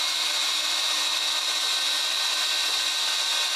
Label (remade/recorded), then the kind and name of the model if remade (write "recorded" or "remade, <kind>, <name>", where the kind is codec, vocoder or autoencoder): recorded